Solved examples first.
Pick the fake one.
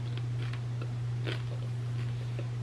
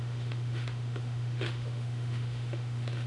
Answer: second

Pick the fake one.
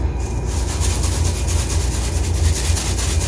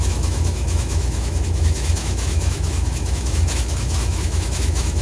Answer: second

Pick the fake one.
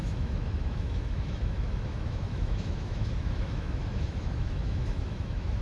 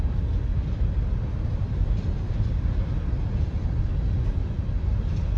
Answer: first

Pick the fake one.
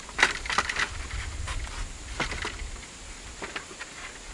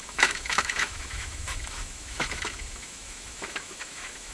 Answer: second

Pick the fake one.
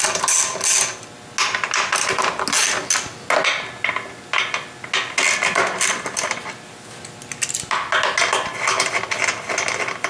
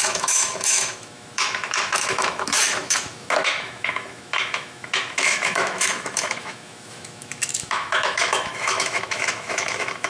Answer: second